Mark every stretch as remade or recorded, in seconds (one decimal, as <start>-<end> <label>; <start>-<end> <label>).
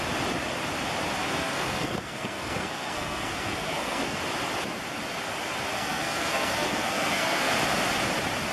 0.0-1.2 recorded; 1.2-4.2 remade; 4.2-5.7 recorded; 5.7-7.5 remade; 7.5-8.5 recorded